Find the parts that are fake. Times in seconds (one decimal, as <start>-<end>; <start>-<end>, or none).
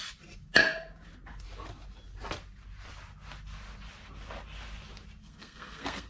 5.2-6.1